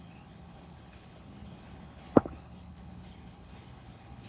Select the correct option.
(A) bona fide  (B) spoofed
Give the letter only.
B